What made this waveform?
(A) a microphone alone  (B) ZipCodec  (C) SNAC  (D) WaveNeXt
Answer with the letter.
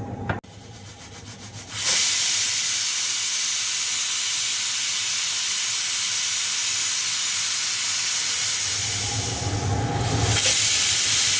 A